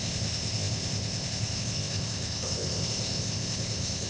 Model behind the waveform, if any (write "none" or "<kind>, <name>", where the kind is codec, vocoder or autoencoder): codec, ZipCodec